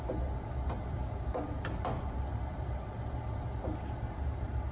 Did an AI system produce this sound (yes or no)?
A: no